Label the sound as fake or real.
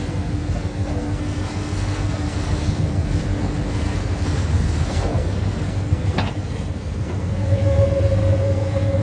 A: fake